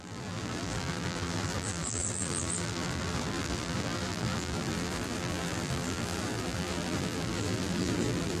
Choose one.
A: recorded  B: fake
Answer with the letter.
B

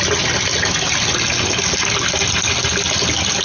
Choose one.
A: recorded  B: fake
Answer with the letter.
A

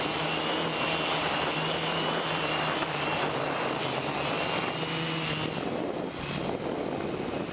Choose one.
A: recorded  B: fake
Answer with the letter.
A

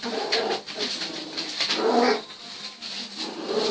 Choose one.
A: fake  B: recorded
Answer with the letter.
B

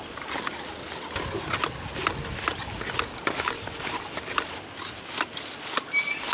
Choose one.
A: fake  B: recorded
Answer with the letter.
B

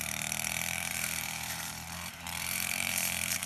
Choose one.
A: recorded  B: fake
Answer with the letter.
B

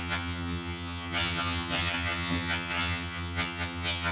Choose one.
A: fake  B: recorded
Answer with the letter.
A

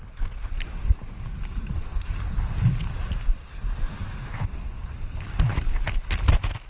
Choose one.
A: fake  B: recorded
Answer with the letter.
B